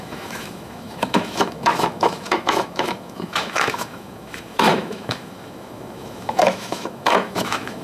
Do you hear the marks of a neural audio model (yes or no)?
yes